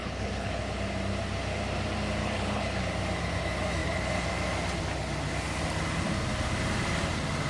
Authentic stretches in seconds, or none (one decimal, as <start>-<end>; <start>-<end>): 0.6-2.2; 2.8-7.5